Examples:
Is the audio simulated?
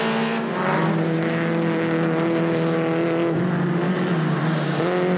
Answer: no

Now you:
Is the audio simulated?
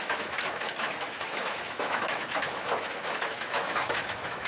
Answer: yes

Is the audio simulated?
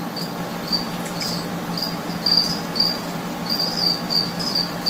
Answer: no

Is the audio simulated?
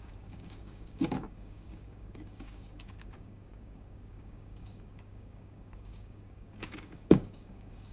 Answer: yes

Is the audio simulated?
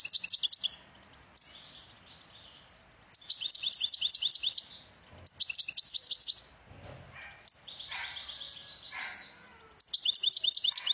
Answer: no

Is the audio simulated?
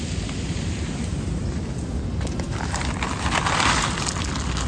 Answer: no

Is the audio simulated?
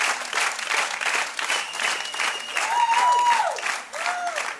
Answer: no